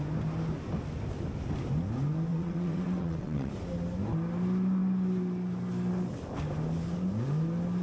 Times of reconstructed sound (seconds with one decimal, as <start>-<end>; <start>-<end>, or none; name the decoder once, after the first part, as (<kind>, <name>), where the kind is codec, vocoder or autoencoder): 2.3-3.5 (vocoder, WaveNeXt)